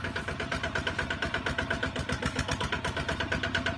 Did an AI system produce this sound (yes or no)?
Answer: no